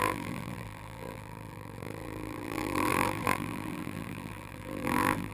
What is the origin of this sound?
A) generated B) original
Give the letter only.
A